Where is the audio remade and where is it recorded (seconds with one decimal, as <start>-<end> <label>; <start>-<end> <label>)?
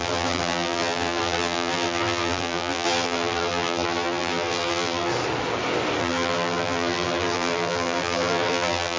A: 0.0-5.1 remade; 5.1-6.0 recorded; 6.0-9.0 remade